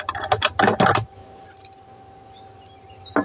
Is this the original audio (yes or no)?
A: yes